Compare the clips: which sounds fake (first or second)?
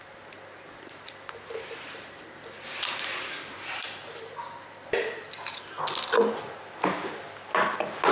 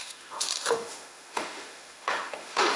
second